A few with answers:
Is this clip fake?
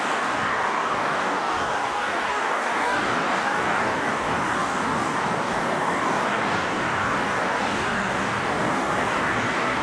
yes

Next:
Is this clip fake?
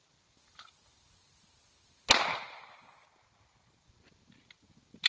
no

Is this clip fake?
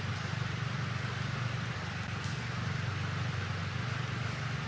no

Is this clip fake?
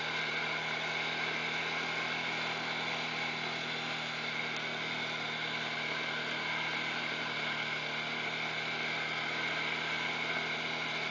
no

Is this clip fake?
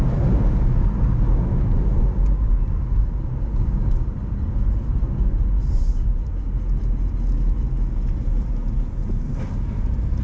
no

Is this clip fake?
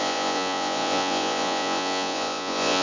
yes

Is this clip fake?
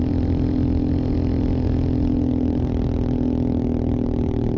no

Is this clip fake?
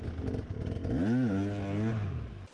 no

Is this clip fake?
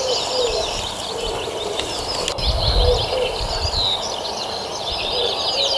no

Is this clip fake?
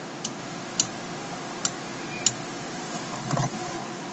no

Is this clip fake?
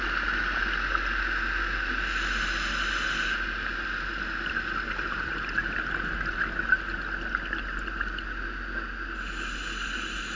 no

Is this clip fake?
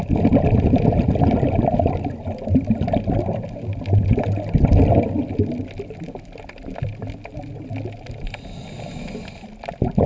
no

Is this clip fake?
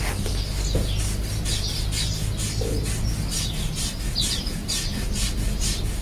no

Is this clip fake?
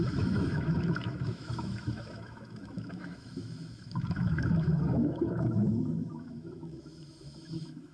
yes